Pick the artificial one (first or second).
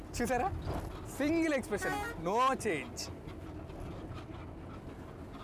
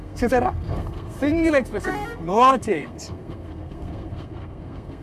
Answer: second